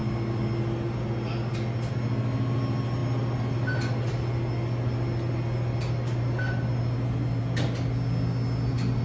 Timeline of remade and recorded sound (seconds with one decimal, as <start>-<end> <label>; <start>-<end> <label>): 0.0-9.0 recorded